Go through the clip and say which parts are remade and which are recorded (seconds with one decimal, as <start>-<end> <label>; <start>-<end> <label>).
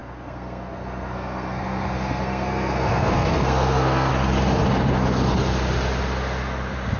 0.0-4.1 remade; 4.1-7.0 recorded